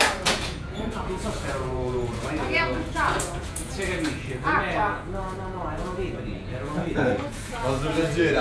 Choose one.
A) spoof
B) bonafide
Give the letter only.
A